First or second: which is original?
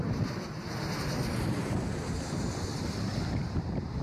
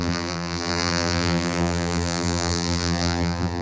first